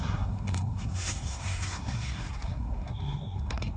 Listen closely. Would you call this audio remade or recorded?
remade